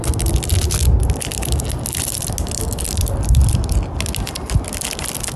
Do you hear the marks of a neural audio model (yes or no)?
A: no